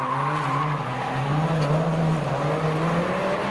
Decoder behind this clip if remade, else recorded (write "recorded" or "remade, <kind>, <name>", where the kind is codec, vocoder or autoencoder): recorded